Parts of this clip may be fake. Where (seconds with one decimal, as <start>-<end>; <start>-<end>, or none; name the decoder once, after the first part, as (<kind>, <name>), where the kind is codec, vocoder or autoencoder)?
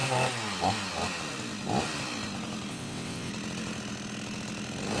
2.7-3.3 (vocoder, WaveNeXt)